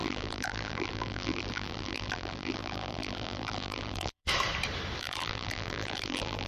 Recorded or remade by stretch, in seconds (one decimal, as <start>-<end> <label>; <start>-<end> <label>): 0.0-4.2 remade; 4.2-5.0 recorded; 5.0-6.5 remade